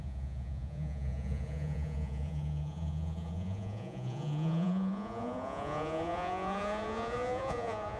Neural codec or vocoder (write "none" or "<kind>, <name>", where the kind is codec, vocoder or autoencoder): vocoder, Vocos